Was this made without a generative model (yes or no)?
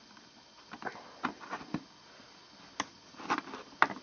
yes